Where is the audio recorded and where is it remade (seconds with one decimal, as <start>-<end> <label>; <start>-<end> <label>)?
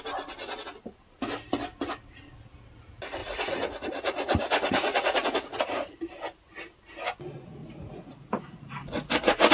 0.0-3.2 recorded; 3.2-6.0 remade; 6.0-7.6 recorded; 7.6-9.5 remade